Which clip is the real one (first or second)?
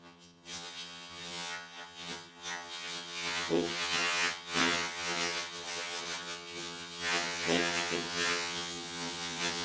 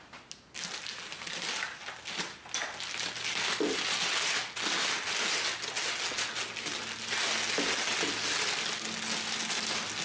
second